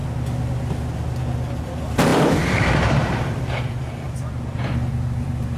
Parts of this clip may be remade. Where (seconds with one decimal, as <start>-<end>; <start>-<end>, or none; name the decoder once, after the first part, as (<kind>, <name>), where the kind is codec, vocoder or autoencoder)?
1.6-5.6 (vocoder, BigVGAN v2)